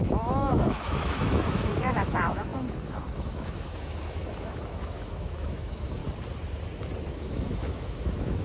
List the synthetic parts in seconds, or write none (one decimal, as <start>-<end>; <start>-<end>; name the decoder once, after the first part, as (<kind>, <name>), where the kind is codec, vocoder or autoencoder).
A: 0.0-6.0 (autoencoder, DAC-VAE); 7.1-8.4